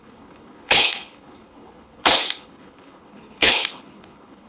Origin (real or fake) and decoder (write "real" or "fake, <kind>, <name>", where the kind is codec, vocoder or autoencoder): fake, codec, HILCodec